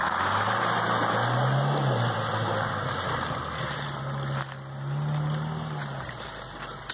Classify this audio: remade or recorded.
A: recorded